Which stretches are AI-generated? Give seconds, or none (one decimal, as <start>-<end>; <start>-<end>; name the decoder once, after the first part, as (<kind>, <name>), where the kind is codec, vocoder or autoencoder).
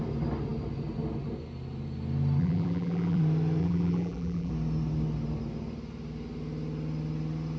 2.4-3.2 (vocoder, BigVGAN v2); 3.6-4.5